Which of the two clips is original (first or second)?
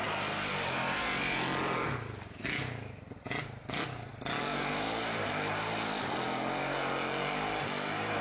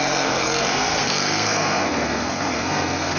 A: first